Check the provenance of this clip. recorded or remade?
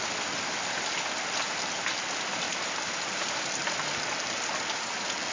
recorded